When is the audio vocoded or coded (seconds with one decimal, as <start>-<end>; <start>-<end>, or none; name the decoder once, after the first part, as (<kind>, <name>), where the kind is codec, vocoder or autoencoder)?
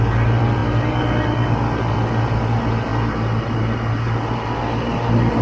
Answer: none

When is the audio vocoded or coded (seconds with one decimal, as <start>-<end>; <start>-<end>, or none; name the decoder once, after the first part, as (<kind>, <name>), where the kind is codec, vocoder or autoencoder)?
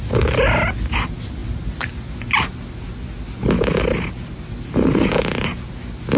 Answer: none